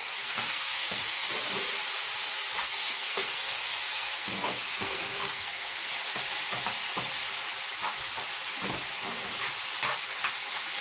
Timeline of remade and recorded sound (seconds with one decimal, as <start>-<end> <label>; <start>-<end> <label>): 0.0-1.3 remade; 1.3-2.6 recorded; 2.6-5.9 remade; 5.9-10.8 recorded